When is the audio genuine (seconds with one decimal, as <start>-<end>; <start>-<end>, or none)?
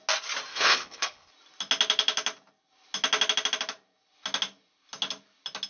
0.0-0.5; 1.3-5.7